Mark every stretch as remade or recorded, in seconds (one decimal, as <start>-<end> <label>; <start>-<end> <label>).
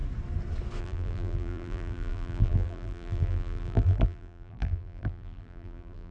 0.0-0.8 recorded; 0.8-6.1 remade